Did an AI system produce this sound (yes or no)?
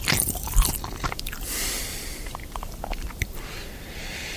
yes